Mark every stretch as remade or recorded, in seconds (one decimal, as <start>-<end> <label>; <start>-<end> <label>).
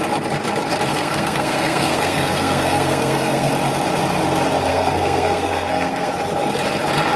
0.0-0.9 recorded; 0.9-3.5 remade; 3.5-4.7 recorded; 4.7-6.1 remade; 6.1-7.2 recorded